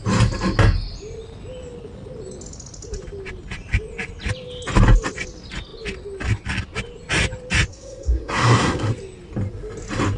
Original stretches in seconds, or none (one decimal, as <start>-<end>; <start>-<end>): 0.0-7.7; 8.9-10.2